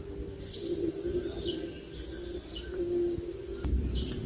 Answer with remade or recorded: recorded